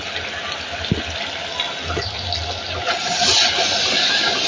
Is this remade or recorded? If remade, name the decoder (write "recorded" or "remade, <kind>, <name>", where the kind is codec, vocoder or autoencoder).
recorded